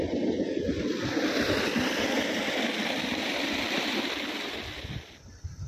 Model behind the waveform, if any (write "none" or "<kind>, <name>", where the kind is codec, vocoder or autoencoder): none